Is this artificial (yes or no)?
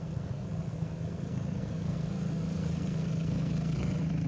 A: yes